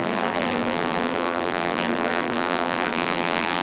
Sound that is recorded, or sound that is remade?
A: remade